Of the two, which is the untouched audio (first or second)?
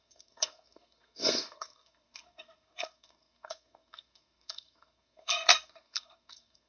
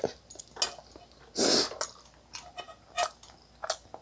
second